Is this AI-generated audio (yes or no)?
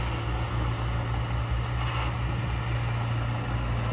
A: no